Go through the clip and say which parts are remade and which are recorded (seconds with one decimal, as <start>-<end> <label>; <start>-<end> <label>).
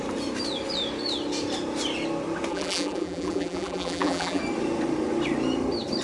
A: 0.0-2.5 recorded; 2.5-4.4 remade; 4.4-6.0 recorded